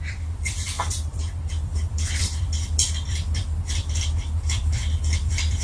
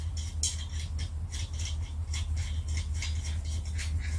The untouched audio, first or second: second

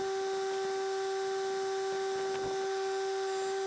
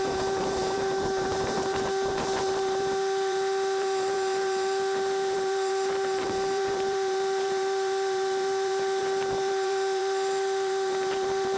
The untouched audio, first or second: first